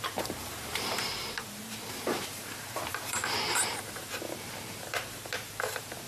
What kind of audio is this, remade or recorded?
remade